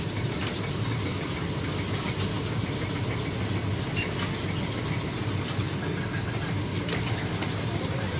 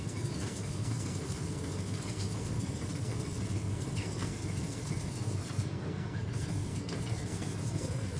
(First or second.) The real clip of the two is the first